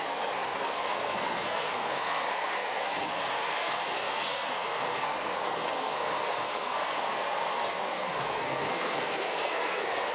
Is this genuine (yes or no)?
no